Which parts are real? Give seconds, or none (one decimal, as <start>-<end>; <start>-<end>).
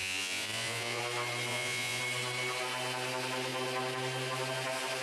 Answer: 1.0-1.5; 2.0-5.0